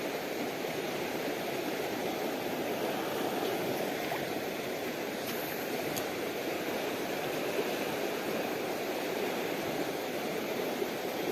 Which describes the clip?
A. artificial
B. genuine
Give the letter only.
A